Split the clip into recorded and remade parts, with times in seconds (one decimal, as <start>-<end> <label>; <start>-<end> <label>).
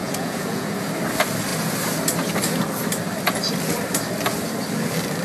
0.0-0.7 remade; 0.7-5.2 recorded